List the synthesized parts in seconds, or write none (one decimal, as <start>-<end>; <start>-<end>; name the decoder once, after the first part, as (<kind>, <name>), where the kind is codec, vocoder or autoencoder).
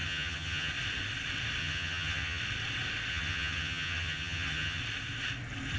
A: 0.0-0.7 (vocoder, HiFi-GAN); 1.6-2.4; 3.1-4.8